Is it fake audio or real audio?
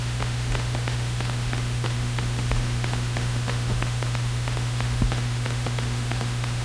fake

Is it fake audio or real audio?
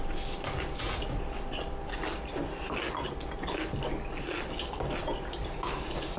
real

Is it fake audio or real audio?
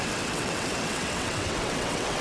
fake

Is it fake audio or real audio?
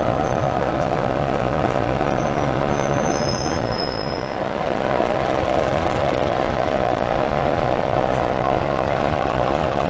fake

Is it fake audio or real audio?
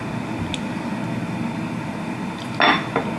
real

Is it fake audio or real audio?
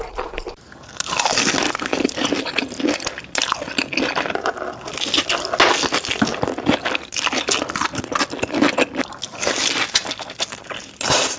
real